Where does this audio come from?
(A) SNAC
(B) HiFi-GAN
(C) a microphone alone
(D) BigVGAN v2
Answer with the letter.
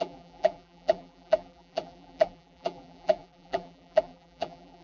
D